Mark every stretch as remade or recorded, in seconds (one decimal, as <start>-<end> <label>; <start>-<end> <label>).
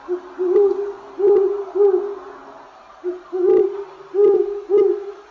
0.0-5.3 recorded